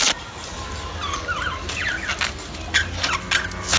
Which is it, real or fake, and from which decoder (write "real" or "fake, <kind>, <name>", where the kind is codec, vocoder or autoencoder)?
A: real